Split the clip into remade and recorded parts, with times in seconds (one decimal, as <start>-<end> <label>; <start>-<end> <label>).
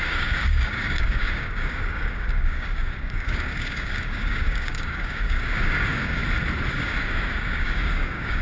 0.0-6.2 remade; 6.2-6.7 recorded; 6.7-8.4 remade